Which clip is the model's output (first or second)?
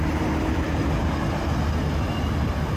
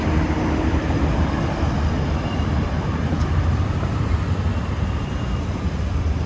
second